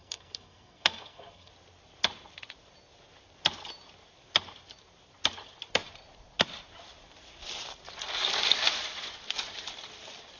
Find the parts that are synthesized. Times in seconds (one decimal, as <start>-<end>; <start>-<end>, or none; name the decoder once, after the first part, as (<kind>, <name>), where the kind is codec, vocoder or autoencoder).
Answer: 0.0-1.5 (codec, SNAC)